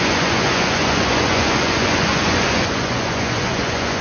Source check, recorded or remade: remade